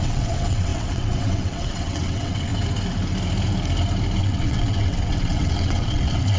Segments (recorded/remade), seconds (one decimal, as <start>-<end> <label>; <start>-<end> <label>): 0.0-2.5 remade; 2.5-4.2 recorded; 4.2-6.4 remade